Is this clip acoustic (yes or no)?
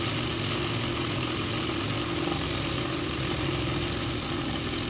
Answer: yes